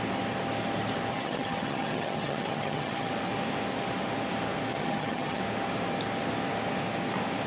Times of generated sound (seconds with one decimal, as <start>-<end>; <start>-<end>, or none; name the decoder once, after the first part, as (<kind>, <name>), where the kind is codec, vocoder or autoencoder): 1.1-3.1 (vocoder, HiFi-GAN); 4.7-5.4